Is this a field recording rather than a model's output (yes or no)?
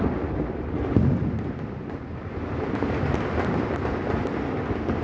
yes